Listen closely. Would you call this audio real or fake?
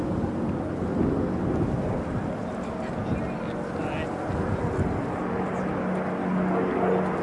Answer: real